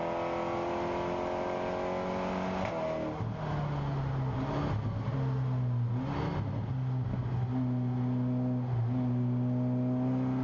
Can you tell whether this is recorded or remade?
recorded